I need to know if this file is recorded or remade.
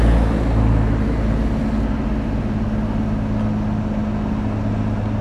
recorded